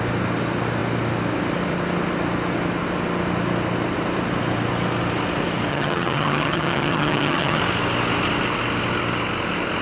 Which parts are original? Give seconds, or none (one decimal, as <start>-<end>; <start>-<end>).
0.0-5.7; 7.6-9.8